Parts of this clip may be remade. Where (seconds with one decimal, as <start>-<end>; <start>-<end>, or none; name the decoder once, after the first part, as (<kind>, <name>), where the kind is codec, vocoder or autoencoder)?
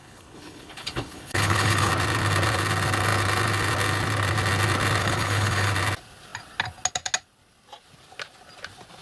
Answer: 0.0-1.9 (codec, HILCodec); 5.0-5.7